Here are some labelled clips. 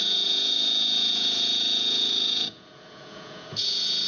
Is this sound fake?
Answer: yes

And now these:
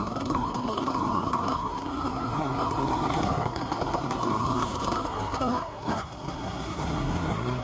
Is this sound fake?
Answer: yes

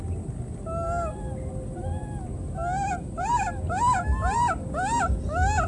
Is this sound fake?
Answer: no